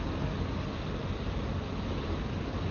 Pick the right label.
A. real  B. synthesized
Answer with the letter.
A